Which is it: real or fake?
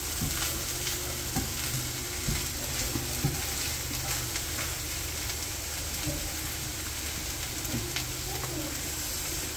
real